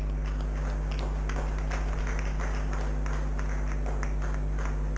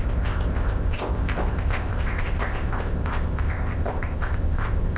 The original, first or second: first